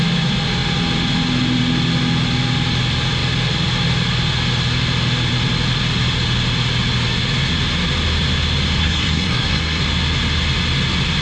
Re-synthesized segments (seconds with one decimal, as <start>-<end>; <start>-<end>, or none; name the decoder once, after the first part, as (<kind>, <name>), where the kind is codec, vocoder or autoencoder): 8.8-9.8 (codec, SNAC)